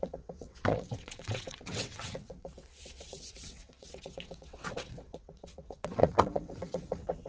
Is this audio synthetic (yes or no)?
yes